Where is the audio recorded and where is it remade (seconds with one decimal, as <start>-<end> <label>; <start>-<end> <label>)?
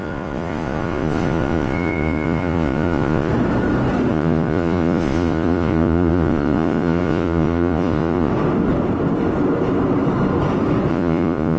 0.0-3.3 remade; 3.3-4.1 recorded; 4.1-8.3 remade; 8.3-10.9 recorded; 10.9-11.6 remade